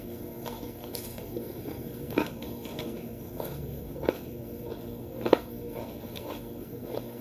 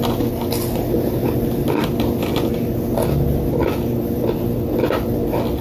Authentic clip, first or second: second